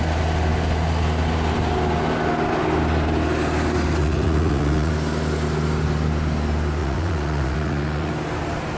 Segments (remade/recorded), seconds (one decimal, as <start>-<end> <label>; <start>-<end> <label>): 0.0-4.0 recorded; 4.0-4.9 remade; 4.9-6.8 recorded; 6.8-8.1 remade; 8.1-8.8 recorded